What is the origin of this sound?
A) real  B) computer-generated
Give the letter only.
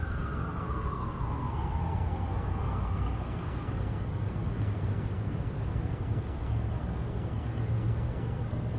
B